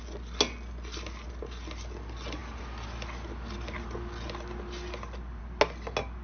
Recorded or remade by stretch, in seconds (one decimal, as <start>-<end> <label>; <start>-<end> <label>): 0.0-6.2 recorded